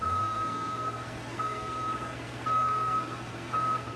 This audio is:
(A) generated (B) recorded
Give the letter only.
A